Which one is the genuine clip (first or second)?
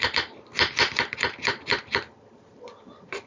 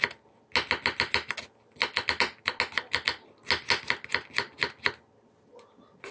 second